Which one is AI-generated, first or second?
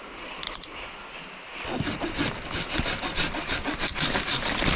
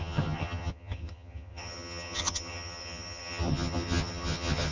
second